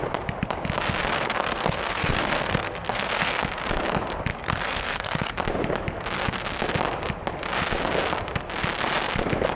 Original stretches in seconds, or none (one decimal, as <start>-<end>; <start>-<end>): 0.0-1.0; 3.4-4.3; 5.3-9.6